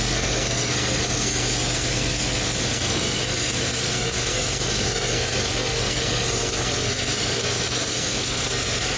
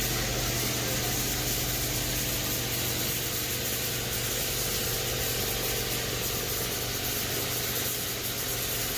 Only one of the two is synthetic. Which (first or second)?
first